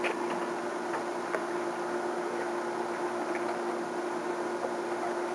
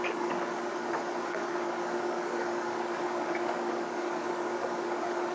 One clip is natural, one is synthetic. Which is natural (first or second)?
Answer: first